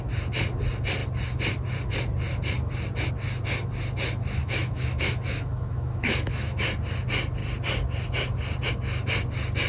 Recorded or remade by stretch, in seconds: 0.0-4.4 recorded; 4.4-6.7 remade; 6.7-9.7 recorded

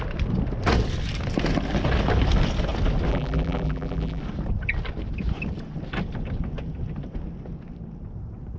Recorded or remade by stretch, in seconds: 0.0-3.1 recorded; 3.1-4.2 remade; 4.2-8.6 recorded